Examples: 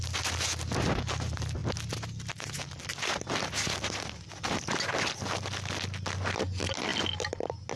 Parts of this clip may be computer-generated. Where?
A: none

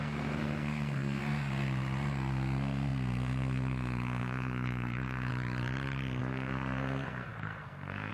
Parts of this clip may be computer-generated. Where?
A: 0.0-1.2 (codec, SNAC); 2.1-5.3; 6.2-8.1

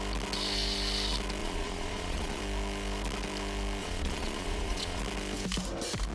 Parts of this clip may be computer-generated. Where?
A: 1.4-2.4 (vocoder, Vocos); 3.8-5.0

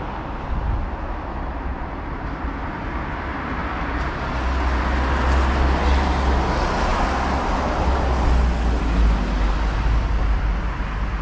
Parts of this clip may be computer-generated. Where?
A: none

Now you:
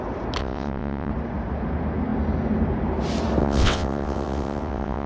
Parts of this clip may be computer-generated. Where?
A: 0.4-1.1 (vocoder, WaveNeXt); 3.4-5.1

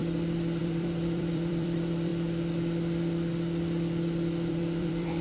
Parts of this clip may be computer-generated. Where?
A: 0.6-2.1 (vocoder, BigVGAN v2); 4.5-5.2

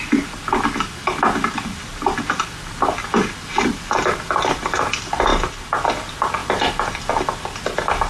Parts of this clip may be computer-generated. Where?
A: none